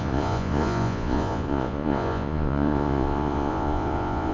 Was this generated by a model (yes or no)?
yes